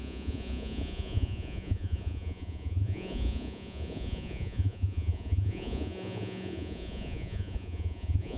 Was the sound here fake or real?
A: fake